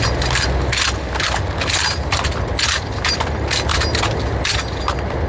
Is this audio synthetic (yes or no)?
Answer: no